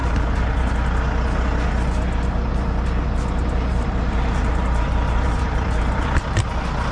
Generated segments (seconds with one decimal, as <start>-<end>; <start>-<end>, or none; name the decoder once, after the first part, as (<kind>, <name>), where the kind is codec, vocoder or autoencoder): 0.0-0.7 (vocoder, BigVGAN v2); 3.7-6.2